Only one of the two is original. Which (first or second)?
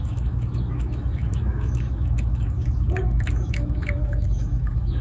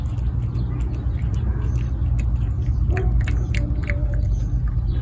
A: second